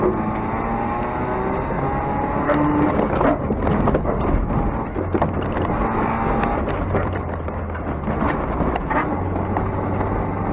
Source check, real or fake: real